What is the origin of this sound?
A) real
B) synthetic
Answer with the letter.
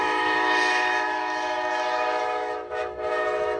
B